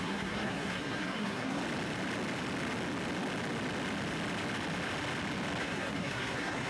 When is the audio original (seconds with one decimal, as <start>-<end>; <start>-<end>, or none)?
1.6-5.6